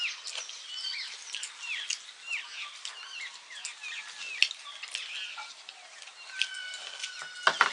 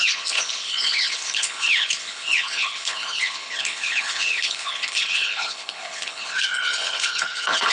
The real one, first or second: first